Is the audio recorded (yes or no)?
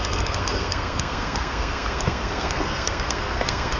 no